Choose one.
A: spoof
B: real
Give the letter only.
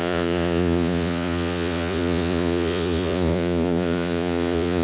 A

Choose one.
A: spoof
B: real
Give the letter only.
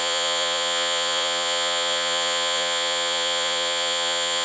A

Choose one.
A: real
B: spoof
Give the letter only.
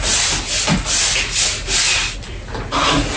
A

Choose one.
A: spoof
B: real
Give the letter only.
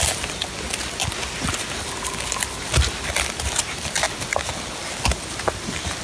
B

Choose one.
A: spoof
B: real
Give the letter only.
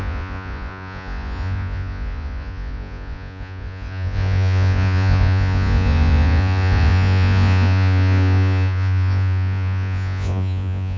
A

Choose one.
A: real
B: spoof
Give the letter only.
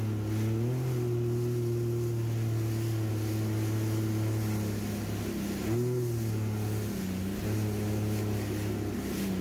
A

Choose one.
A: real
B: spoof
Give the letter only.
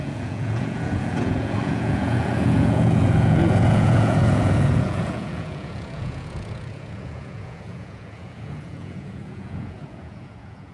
B